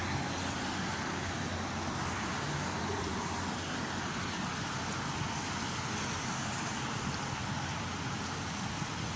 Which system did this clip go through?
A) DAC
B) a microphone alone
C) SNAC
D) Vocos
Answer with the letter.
B